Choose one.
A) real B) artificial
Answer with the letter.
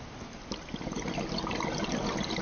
A